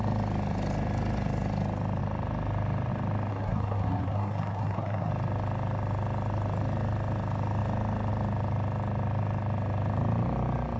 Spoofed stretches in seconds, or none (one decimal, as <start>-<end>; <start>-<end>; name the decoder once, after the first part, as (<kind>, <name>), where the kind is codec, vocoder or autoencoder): 3.3-5.1 (codec, SNAC)